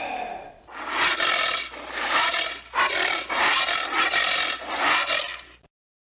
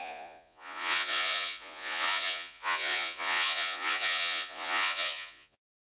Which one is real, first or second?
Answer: first